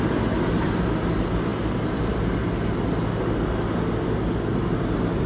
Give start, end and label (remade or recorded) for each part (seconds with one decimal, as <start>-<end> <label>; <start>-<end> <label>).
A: 0.0-5.3 recorded